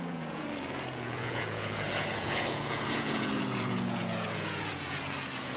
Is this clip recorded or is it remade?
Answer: remade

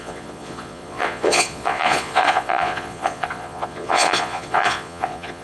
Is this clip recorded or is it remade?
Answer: remade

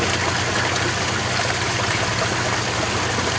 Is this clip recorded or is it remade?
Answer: recorded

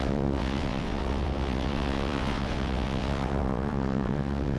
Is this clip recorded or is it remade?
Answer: remade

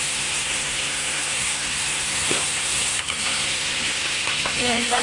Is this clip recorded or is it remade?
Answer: remade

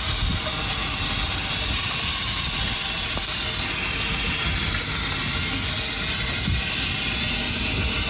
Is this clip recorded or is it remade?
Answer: recorded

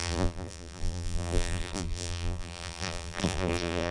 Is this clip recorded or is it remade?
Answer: remade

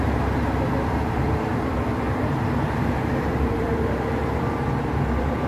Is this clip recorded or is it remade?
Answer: remade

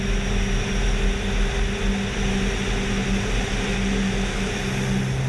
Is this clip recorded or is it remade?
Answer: recorded